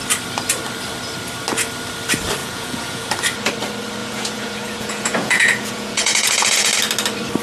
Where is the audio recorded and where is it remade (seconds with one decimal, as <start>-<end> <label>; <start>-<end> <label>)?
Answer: 0.0-2.4 recorded; 2.4-3.1 remade; 3.1-4.0 recorded; 4.0-6.7 remade; 6.7-7.4 recorded